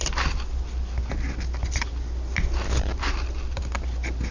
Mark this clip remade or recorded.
recorded